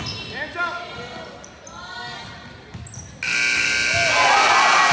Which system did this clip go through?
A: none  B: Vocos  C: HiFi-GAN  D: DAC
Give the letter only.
A